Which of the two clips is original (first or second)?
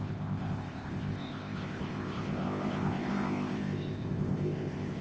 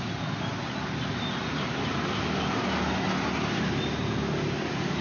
second